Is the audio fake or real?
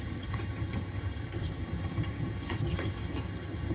fake